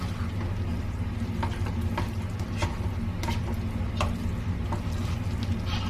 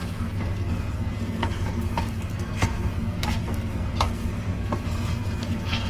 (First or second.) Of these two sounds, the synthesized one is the second